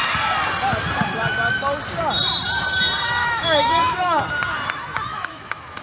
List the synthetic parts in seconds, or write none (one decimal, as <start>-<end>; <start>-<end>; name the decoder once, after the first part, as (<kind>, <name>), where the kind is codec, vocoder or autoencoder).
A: 3.2-4.2 (autoencoder, DAC-VAE); 5.1-5.8